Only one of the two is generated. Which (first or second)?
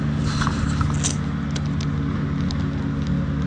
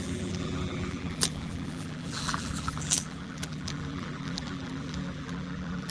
second